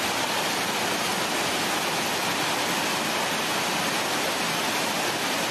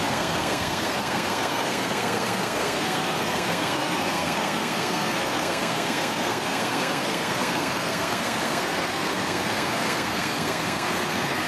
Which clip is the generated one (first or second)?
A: second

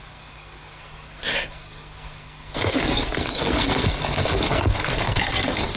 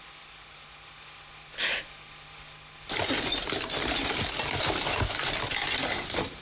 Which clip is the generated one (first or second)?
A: first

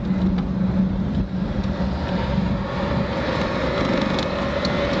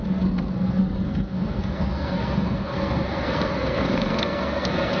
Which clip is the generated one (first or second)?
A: second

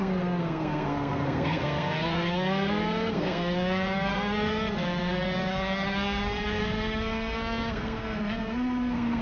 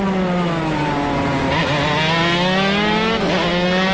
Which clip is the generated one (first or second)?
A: first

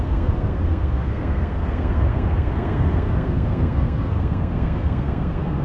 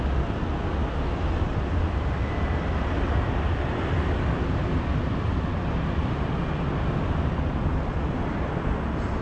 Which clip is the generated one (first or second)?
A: first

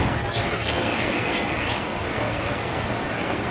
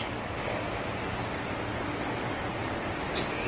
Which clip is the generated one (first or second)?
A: first